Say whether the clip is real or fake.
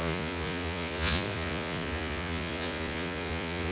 fake